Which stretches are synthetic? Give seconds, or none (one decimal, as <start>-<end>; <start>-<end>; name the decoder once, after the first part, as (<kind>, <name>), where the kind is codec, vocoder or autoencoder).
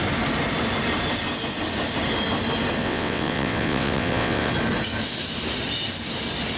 2.8-4.5 (vocoder, WaveNeXt)